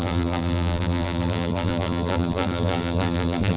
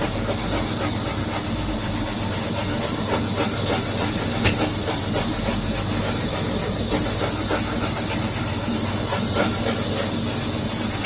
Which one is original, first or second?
second